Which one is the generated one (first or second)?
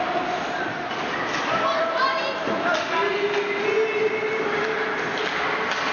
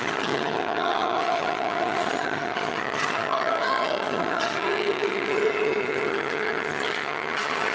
second